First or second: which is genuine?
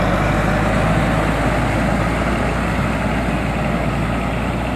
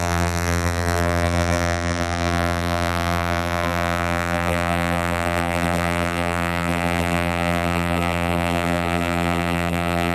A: first